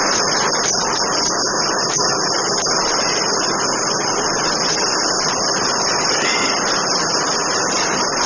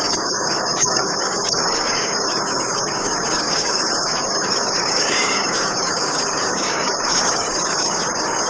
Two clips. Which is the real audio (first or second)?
first